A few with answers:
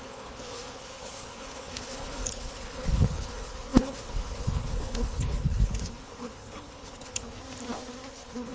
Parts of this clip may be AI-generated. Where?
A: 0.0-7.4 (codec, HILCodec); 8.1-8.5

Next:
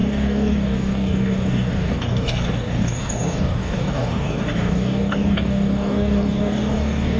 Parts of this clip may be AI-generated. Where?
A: 0.0-7.2 (codec, DAC)

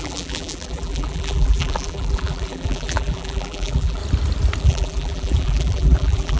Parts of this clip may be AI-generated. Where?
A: 0.0-4.0 (vocoder, BigVGAN v2); 4.6-6.4